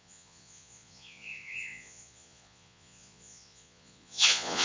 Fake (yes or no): yes